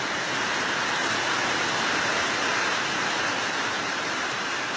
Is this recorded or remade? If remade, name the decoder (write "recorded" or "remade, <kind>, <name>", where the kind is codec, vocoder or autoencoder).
remade, vocoder, BigVGAN v2